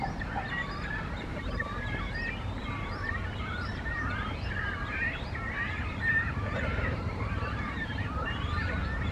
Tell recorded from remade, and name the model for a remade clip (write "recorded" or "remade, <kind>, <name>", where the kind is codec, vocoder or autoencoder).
remade, vocoder, BigVGAN v2